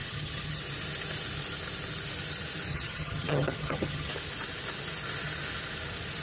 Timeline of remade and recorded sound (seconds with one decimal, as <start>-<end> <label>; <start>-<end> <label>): 0.0-0.6 remade; 0.6-2.7 recorded; 2.7-4.1 remade; 4.1-6.2 recorded